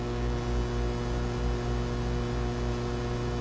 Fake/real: real